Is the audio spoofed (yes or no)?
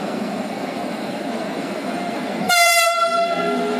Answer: yes